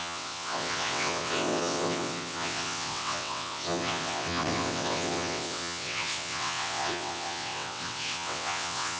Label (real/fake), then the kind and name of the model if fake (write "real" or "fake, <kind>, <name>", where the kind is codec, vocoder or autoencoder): fake, vocoder, WaveNeXt